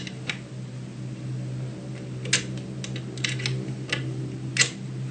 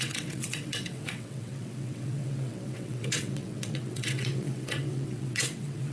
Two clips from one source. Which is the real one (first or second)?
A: first